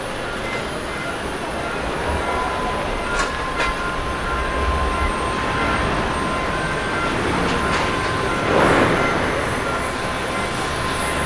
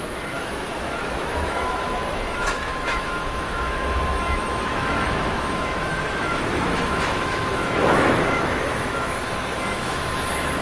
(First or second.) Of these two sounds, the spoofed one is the second